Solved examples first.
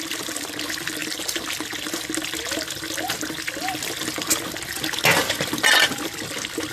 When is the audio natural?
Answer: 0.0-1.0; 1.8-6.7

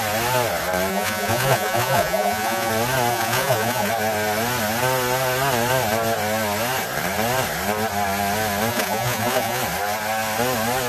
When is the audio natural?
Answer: 0.0-0.9; 2.7-3.1; 3.9-8.7; 9.6-10.9

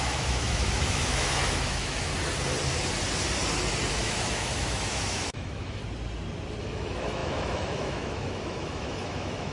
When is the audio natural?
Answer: 2.1-3.9; 5.8-6.6